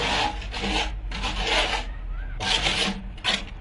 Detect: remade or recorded recorded